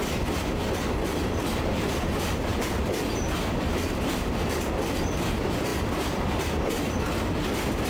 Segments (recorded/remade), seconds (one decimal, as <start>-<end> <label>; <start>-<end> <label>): 0.0-7.9 recorded